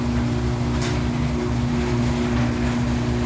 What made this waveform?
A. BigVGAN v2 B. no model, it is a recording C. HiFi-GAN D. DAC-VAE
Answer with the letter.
B